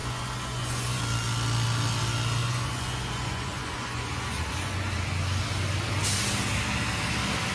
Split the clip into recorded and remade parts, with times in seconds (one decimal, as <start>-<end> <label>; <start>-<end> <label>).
0.0-1.0 remade; 1.0-2.4 recorded; 2.4-4.9 remade; 4.9-7.5 recorded